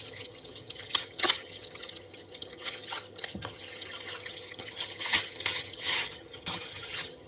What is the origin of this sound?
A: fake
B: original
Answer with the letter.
A